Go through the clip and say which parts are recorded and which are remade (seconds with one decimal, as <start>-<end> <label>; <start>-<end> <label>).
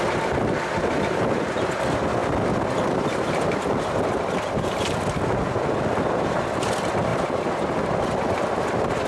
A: 0.0-9.1 recorded